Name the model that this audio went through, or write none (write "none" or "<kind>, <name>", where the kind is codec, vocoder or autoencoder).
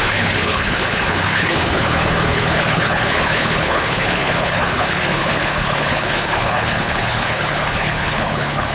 codec, HILCodec